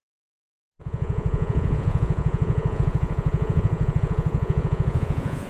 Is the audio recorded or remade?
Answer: remade